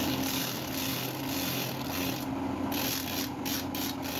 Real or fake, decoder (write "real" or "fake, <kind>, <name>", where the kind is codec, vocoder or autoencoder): real